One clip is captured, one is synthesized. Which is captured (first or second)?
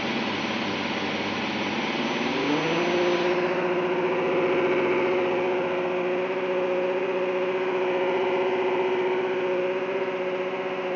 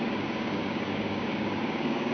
first